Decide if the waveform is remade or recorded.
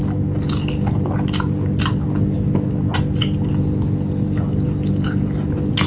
recorded